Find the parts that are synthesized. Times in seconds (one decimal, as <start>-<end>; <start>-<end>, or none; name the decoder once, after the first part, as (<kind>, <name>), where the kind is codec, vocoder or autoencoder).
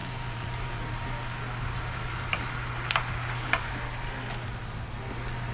0.0-1.0 (vocoder, BigVGAN v2)